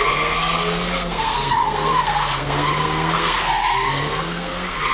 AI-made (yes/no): yes